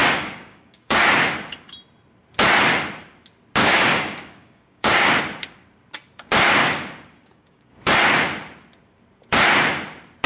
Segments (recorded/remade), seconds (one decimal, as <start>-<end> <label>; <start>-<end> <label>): 0.0-1.1 remade; 1.1-3.6 recorded; 3.6-5.2 remade; 5.2-6.6 recorded; 6.6-7.7 remade; 7.7-10.3 recorded